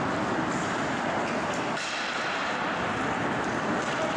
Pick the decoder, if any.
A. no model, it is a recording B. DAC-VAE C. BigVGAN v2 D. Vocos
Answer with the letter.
A